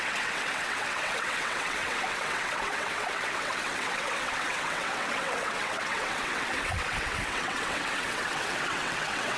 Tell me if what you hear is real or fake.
fake